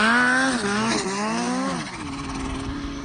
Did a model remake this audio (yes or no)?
no